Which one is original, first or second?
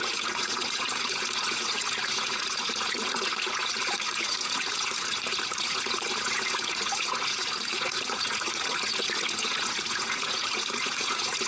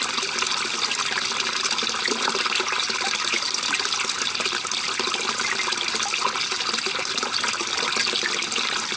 second